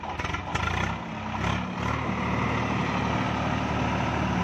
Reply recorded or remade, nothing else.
recorded